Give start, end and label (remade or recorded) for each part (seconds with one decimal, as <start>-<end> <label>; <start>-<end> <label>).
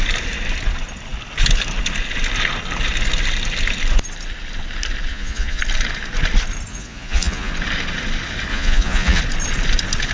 0.0-5.1 recorded; 5.1-5.6 remade; 5.6-6.7 recorded; 6.7-7.5 remade; 7.5-8.5 recorded; 8.5-9.2 remade; 9.2-10.1 recorded